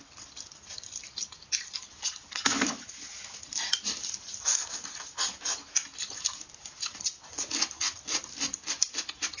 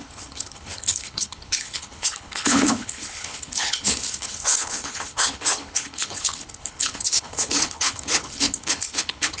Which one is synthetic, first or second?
second